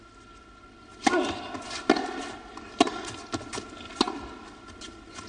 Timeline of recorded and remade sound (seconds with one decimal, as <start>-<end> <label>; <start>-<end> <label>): 0.0-5.3 recorded